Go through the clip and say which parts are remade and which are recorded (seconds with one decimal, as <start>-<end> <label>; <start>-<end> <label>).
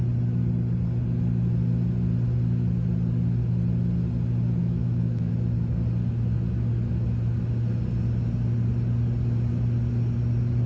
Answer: 0.0-4.6 recorded; 4.6-5.3 remade; 5.3-10.7 recorded